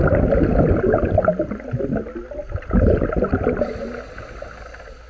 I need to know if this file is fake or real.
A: real